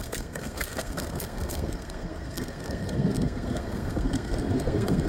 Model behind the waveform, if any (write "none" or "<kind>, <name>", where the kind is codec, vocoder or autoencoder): codec, SNAC